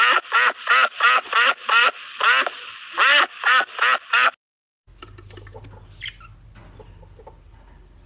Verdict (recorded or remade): recorded